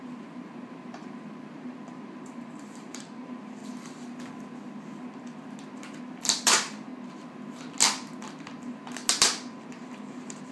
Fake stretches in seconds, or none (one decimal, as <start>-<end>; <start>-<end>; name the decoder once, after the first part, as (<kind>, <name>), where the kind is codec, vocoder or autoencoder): 0.0-3.6 (vocoder, BigVGAN v2); 6.0-6.9; 9.2-10.5